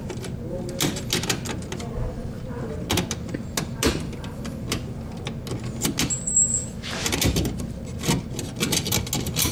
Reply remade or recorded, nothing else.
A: recorded